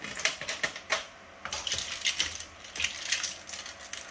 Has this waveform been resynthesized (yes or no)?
no